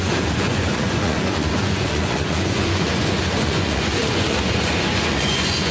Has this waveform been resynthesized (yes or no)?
yes